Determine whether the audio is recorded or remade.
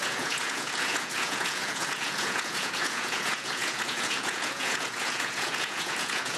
remade